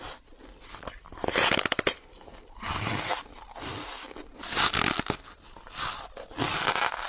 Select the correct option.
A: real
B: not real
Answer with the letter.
A